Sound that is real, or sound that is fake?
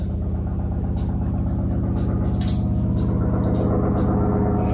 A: real